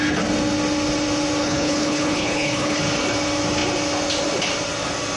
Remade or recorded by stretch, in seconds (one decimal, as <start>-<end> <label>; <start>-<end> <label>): 0.0-1.4 recorded; 1.4-2.8 remade; 2.8-5.2 recorded